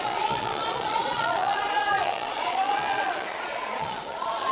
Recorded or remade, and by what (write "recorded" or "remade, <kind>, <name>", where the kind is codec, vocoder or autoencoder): remade, vocoder, Vocos